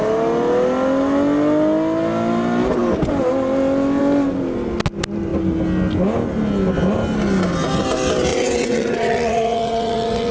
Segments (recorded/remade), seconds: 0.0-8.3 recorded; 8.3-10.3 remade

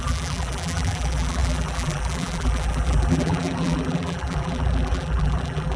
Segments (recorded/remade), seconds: 0.0-5.8 remade

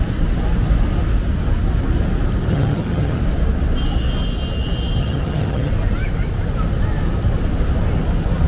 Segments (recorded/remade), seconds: 0.0-2.5 recorded; 2.5-3.2 remade; 3.2-5.0 recorded; 5.0-5.7 remade; 5.7-8.5 recorded

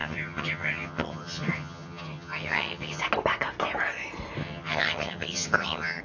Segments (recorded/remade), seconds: 0.0-3.0 remade; 3.0-4.4 recorded; 4.4-6.0 remade

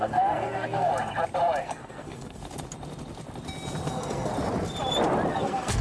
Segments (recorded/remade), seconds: 0.0-0.9 remade; 0.9-1.6 recorded; 1.6-2.4 remade; 2.4-3.9 recorded; 3.9-4.3 remade; 4.3-5.3 recorded; 5.3-5.8 remade

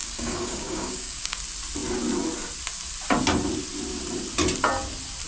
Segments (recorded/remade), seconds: 0.0-1.4 remade; 1.4-5.3 recorded